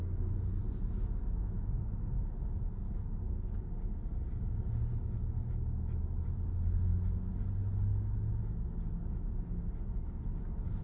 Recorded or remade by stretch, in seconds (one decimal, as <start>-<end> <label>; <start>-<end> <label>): 0.0-10.8 recorded